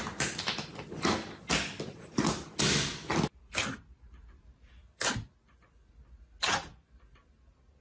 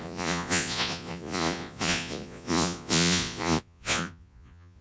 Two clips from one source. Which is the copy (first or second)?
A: second